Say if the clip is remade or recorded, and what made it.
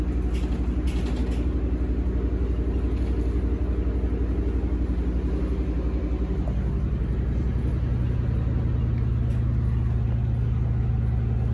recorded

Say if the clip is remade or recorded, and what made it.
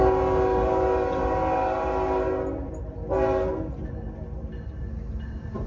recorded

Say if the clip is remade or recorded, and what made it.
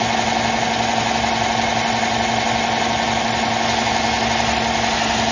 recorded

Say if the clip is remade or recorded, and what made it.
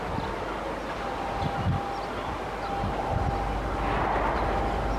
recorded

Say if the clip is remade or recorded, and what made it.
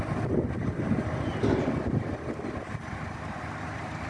recorded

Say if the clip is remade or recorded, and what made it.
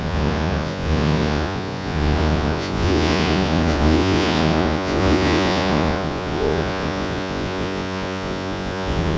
remade, vocoder, Vocos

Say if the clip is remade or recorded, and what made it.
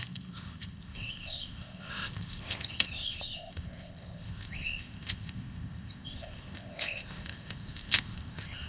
remade, codec, ZipCodec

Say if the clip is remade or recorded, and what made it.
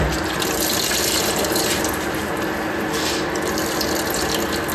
recorded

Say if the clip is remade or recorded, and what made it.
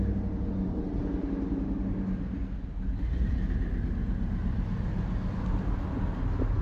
recorded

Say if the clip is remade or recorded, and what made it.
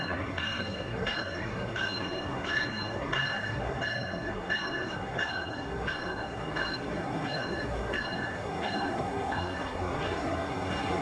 remade, codec, SNAC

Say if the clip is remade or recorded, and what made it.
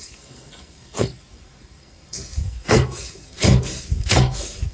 remade, codec, SNAC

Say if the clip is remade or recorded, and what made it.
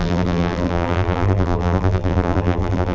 remade, vocoder, BigVGAN v2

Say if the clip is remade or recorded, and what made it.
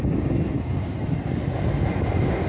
recorded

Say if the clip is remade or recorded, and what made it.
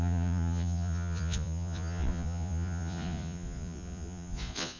remade, vocoder, Vocos